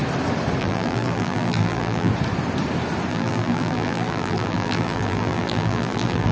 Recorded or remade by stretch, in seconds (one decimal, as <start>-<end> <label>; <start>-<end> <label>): 0.0-0.6 recorded; 0.6-2.1 remade; 2.1-3.1 recorded; 3.1-6.3 remade